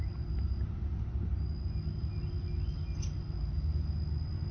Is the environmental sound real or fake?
real